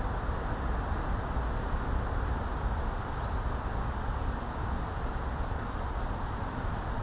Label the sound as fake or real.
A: real